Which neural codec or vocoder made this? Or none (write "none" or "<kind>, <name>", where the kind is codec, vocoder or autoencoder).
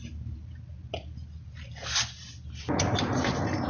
none